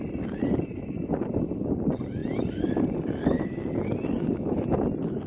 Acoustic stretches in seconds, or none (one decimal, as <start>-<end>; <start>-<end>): 0.0-5.3